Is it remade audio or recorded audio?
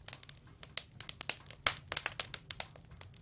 recorded